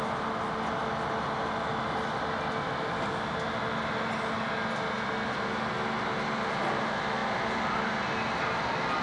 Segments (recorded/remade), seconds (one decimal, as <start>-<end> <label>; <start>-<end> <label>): 0.0-9.0 recorded